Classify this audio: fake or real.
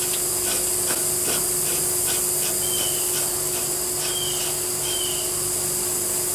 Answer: real